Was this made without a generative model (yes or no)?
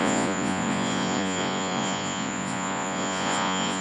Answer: no